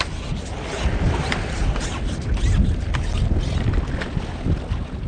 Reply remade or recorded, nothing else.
recorded